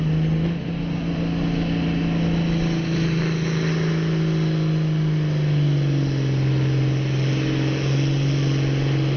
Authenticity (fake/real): real